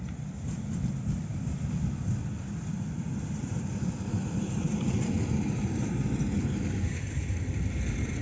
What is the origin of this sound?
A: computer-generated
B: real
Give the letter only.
A